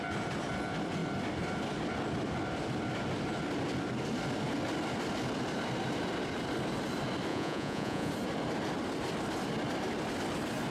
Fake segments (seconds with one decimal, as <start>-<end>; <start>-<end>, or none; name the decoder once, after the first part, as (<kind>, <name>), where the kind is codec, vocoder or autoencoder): 7.3-8.1 (vocoder, Vocos)